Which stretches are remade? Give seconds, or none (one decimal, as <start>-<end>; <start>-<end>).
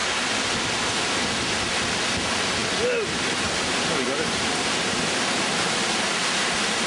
none